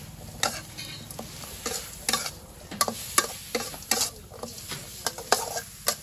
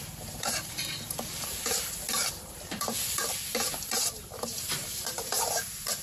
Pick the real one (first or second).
first